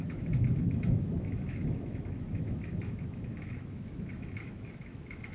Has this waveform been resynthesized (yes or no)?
yes